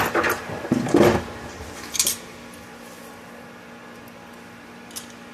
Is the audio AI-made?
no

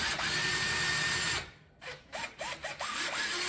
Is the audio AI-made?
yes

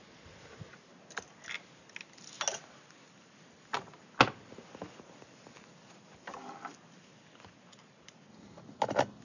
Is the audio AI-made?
no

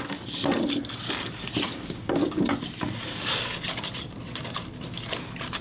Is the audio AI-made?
no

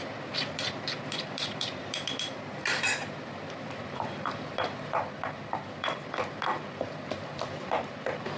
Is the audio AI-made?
yes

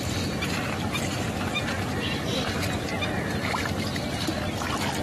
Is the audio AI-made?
no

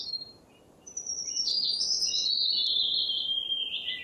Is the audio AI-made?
yes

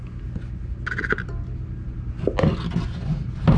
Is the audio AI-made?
no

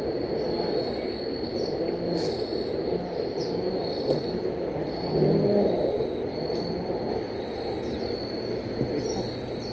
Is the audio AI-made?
no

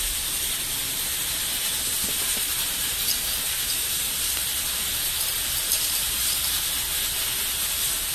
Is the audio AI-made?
no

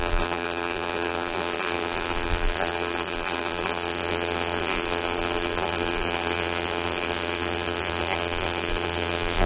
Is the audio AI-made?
yes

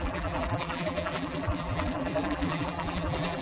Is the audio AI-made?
yes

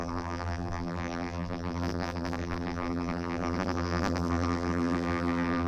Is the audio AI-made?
yes